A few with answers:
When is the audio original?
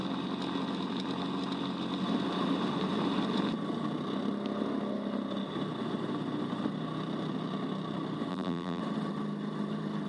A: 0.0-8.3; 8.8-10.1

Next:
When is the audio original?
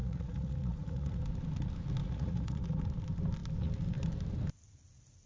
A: 1.2-2.0; 2.6-5.3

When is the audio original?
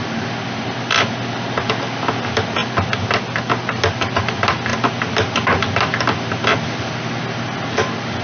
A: 0.0-8.2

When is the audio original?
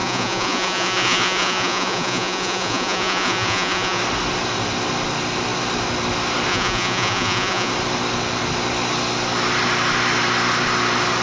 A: 4.0-6.5; 7.7-11.2